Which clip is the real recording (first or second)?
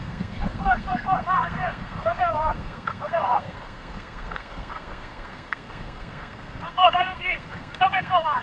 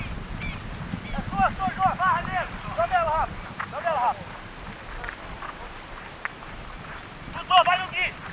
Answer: second